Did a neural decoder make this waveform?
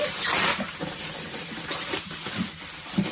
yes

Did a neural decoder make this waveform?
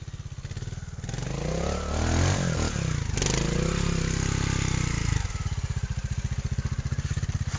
no